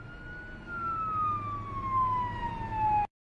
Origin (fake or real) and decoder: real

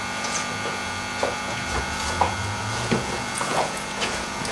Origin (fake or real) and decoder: fake, vocoder, Vocos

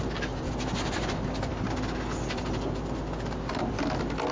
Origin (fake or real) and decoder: real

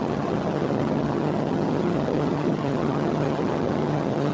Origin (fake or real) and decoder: fake, vocoder, HiFi-GAN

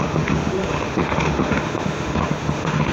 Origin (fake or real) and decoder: fake, autoencoder, DAC-VAE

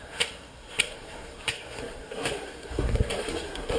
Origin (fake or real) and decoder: fake, codec, SNAC